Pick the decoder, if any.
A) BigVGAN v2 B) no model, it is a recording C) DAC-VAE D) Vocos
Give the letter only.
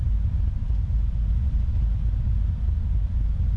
B